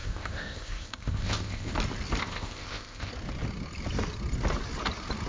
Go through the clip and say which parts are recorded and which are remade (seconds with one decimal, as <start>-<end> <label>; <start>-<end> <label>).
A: 0.0-1.7 remade; 1.7-2.2 recorded; 2.2-3.1 remade; 3.1-5.3 recorded